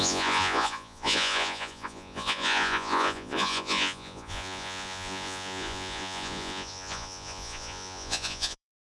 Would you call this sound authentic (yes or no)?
no